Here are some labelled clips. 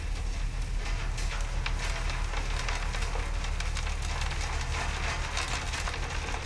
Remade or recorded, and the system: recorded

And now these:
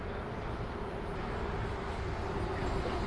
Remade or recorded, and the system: recorded